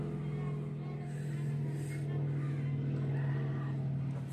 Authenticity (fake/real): real